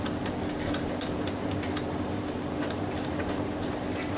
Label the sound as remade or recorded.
recorded